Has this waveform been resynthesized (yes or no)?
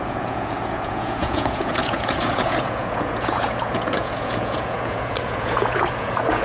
yes